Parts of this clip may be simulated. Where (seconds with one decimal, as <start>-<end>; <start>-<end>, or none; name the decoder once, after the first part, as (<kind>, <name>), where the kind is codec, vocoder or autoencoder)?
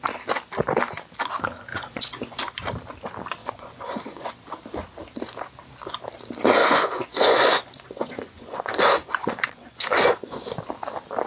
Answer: 1.7-2.4 (vocoder, Vocos); 3.4-4.3; 6.6-10.4